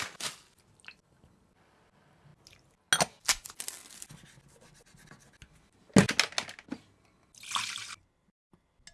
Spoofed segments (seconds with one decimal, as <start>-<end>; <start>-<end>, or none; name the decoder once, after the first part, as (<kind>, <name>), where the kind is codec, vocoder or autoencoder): none